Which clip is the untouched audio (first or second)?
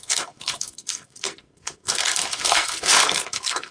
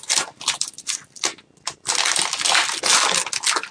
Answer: second